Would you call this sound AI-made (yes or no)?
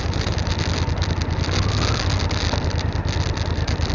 no